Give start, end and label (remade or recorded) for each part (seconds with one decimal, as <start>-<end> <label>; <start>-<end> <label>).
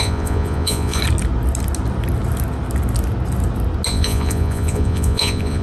0.0-1.0 remade; 1.0-3.9 recorded; 3.9-5.6 remade